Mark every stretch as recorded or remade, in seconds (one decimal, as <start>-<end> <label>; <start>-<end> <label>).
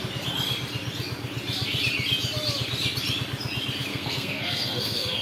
0.0-3.9 recorded; 3.9-5.2 remade